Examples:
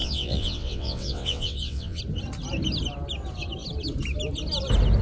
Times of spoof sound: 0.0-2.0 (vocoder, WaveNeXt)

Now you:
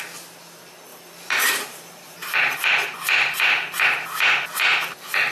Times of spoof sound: 0.9-2.7 (vocoder, BigVGAN v2)

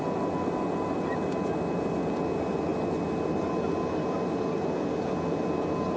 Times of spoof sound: none